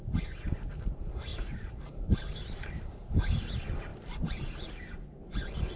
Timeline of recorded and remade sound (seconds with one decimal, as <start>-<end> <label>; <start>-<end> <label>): 0.0-1.3 recorded; 1.3-3.1 remade; 3.1-3.9 recorded; 3.9-4.7 remade; 4.7-5.8 recorded